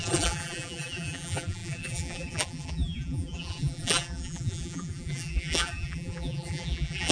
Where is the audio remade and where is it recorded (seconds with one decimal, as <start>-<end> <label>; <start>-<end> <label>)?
0.0-7.1 remade